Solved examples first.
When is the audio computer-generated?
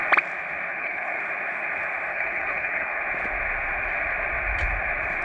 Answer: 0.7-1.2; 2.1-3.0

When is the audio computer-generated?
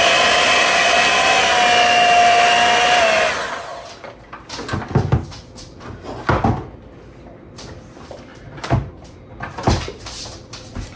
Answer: 8.3-9.9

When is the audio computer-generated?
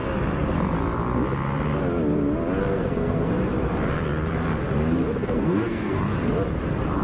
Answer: 2.7-3.3; 5.2-6.0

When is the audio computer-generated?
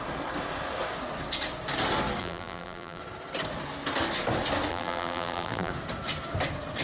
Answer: 2.2-3.0; 4.7-5.7